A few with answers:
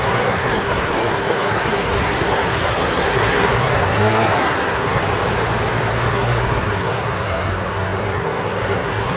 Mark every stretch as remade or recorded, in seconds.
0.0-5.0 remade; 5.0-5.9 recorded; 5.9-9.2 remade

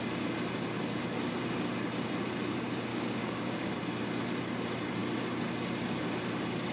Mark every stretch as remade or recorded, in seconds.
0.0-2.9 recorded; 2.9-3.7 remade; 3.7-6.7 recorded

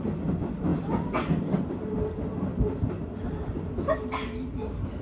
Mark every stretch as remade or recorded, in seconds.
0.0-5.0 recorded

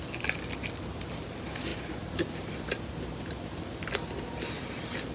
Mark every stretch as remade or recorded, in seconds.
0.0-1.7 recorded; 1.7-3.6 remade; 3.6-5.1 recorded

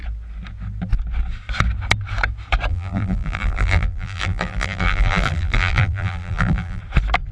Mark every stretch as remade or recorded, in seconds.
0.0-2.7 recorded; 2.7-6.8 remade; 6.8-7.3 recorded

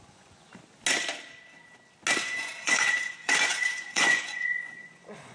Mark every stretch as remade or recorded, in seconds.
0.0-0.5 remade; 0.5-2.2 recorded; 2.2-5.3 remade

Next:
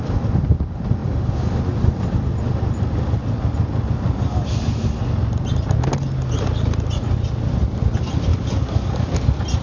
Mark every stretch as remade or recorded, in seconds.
0.0-8.3 recorded; 8.3-9.2 remade; 9.2-9.6 recorded